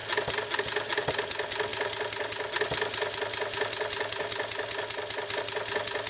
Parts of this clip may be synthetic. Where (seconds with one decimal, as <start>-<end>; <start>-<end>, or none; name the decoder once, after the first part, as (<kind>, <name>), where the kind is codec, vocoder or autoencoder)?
none